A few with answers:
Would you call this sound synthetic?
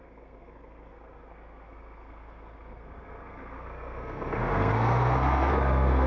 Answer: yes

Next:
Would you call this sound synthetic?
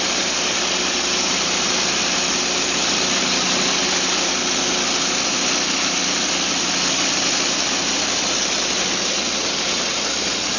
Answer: no